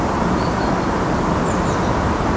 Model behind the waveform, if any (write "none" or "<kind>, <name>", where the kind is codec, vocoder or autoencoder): none